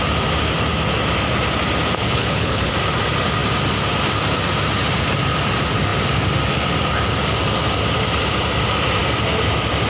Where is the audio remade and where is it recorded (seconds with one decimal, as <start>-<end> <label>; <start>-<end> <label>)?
0.0-2.0 recorded; 2.0-2.7 remade; 2.7-9.9 recorded